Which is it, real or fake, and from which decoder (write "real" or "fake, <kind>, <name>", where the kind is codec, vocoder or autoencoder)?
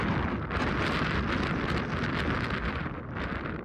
real